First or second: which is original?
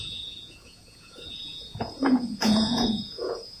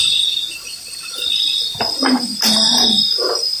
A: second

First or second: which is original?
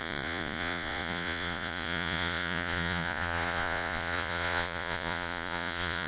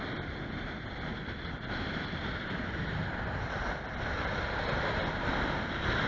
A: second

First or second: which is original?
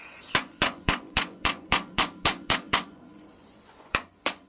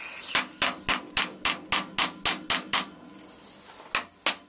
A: second